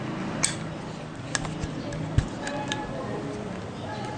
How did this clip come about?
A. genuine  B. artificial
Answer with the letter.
A